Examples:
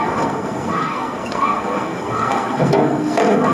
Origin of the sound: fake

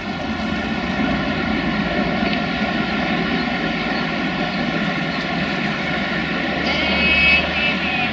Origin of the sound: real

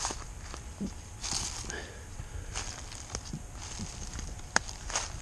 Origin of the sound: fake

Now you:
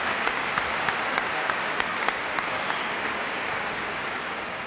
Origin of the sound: fake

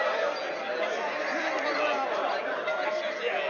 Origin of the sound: real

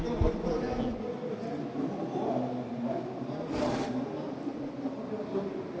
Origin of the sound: real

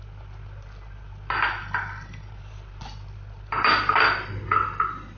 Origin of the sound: real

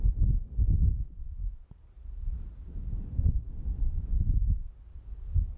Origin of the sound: real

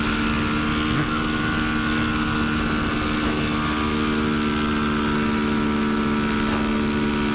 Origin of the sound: real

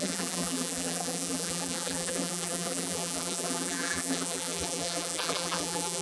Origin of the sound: fake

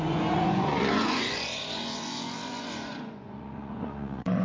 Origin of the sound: fake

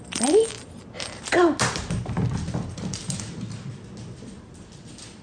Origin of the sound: real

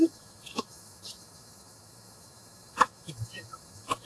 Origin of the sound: fake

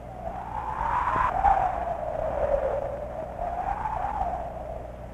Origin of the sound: real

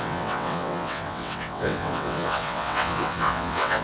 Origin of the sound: fake